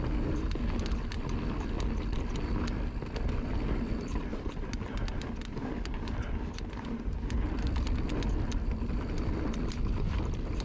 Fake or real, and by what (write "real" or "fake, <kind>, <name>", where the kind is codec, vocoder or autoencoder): real